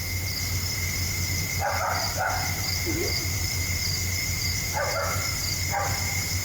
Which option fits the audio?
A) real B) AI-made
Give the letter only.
A